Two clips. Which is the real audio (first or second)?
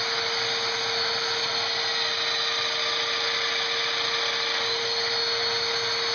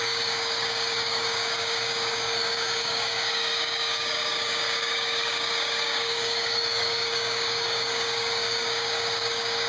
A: first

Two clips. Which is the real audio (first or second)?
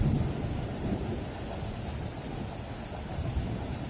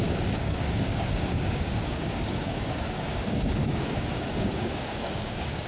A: first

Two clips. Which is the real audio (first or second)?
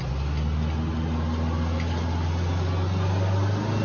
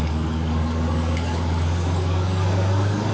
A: first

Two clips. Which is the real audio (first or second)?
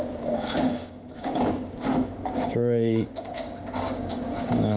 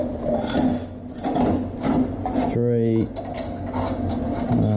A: second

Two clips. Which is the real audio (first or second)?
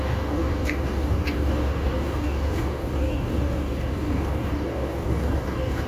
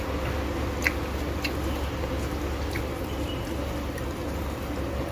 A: second